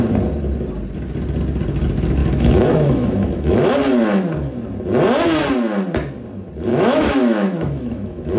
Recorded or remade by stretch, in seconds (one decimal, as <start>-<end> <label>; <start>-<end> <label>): 0.0-2.2 recorded; 2.2-3.7 remade; 3.7-6.7 recorded; 6.7-8.4 remade